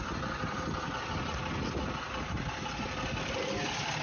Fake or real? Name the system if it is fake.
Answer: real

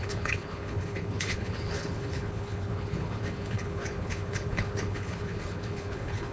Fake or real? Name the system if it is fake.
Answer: fake, codec, HILCodec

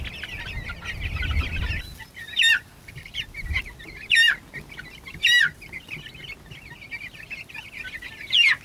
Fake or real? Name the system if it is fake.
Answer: real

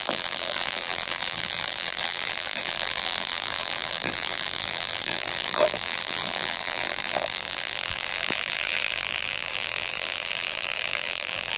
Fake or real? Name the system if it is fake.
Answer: fake, vocoder, BigVGAN v2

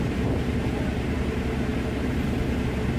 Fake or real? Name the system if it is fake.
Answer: fake, vocoder, BigVGAN v2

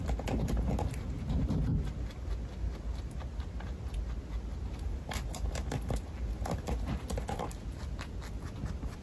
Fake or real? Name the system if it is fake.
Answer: real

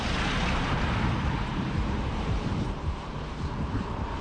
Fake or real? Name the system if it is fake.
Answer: fake, vocoder, BigVGAN v2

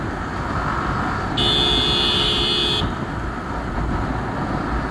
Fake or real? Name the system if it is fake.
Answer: real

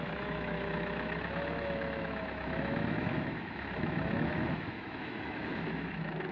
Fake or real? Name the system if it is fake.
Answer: fake, autoencoder, DAC-VAE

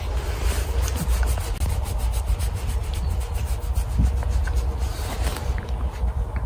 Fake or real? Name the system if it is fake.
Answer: real